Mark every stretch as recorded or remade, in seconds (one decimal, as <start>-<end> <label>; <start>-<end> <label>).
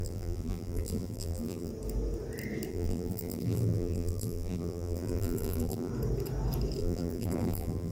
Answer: 0.0-1.7 remade; 1.7-2.7 recorded; 2.7-5.9 remade; 5.9-6.8 recorded; 6.8-7.9 remade